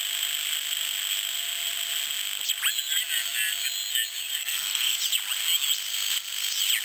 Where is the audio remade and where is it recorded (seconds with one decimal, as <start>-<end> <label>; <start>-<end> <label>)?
0.0-4.4 recorded; 4.4-5.0 remade; 5.0-6.8 recorded